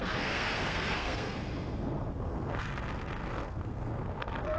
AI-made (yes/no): yes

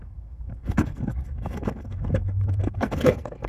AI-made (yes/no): yes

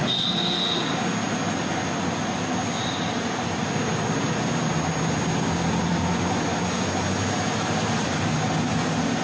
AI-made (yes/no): no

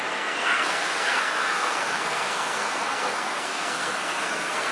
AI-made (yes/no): yes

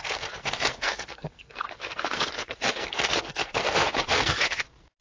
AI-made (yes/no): yes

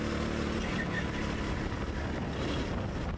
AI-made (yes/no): no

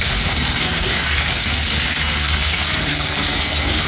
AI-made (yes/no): yes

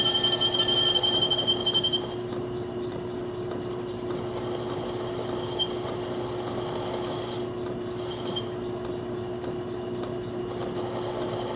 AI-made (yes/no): no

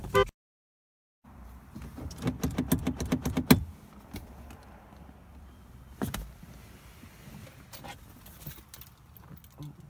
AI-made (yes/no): no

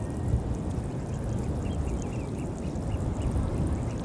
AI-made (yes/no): no